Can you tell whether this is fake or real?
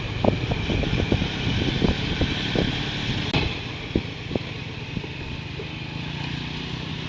real